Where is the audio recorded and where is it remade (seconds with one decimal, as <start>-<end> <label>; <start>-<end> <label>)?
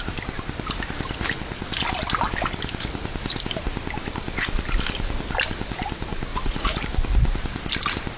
0.0-6.3 recorded; 6.3-6.8 remade; 6.8-8.2 recorded